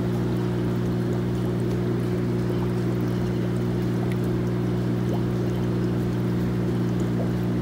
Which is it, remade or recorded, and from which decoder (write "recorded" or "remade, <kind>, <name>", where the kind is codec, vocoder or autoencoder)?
recorded